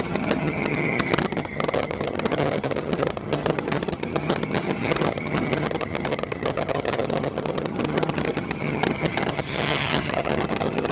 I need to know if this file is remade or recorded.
remade